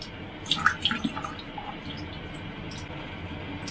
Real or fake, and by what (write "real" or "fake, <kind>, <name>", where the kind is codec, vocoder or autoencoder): real